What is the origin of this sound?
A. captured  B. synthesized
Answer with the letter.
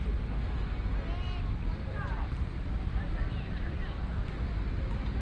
A